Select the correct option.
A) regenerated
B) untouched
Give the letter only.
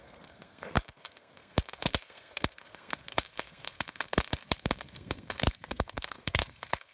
A